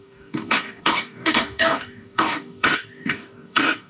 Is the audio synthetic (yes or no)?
yes